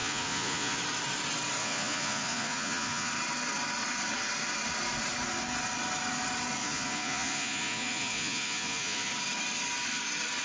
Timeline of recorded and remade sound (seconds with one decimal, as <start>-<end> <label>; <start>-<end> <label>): 0.0-0.8 remade; 0.8-1.6 recorded; 1.6-3.1 remade; 3.1-6.6 recorded; 6.6-9.1 remade; 9.1-10.4 recorded